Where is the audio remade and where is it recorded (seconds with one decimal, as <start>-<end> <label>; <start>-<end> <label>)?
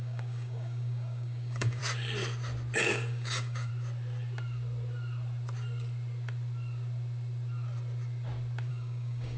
0.0-1.8 remade; 1.8-2.9 recorded; 2.9-3.7 remade; 3.7-8.7 recorded; 8.7-9.4 remade